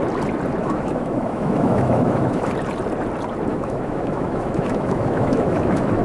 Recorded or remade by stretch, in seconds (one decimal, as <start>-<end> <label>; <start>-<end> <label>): 0.0-0.6 recorded; 0.6-2.5 remade; 2.5-3.5 recorded; 3.5-6.0 remade